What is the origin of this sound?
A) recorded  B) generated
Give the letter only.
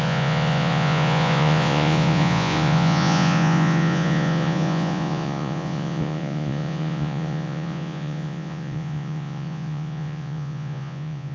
B